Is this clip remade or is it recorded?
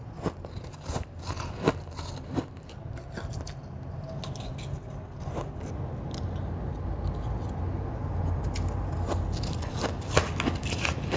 recorded